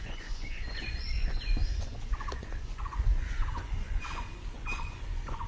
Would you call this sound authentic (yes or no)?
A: no